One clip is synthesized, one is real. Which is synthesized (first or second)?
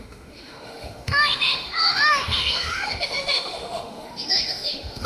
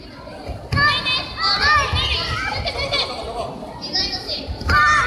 first